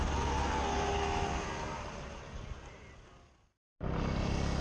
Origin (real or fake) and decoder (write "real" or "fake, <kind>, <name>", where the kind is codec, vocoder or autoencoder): real